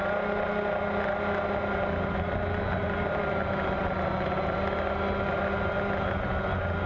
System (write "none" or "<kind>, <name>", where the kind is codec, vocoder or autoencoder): none